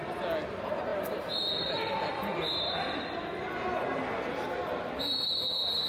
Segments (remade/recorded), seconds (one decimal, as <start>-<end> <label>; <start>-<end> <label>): 0.0-5.9 recorded